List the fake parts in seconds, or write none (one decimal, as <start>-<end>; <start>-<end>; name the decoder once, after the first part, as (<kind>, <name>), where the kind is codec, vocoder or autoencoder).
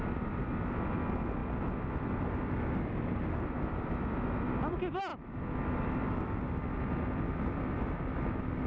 none